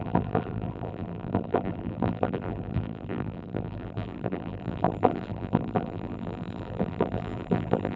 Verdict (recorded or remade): remade